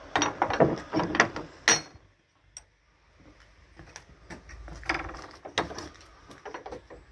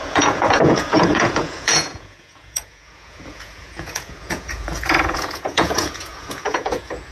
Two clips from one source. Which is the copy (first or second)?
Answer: second